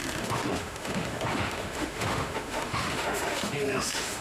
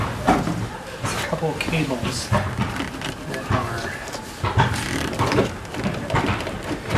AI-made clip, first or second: first